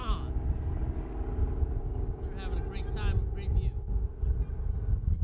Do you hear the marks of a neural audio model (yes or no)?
no